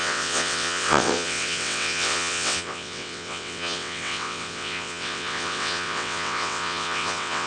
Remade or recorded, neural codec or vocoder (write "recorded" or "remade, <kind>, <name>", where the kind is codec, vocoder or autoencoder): remade, vocoder, WaveNeXt